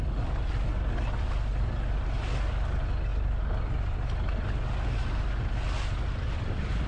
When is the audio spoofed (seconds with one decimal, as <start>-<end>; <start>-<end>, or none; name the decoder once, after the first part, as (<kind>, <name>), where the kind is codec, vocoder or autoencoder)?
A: none